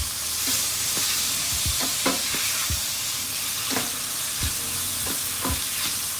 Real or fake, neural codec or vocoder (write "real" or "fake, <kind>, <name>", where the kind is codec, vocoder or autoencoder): fake, vocoder, BigVGAN v2